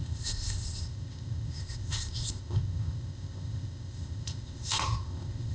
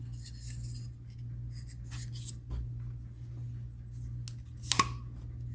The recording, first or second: second